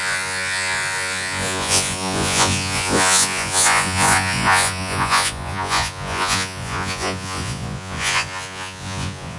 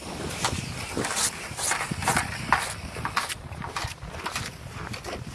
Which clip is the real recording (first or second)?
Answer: second